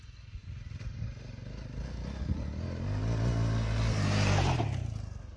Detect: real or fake real